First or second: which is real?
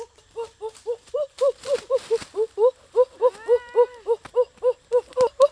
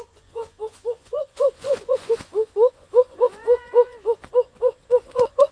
first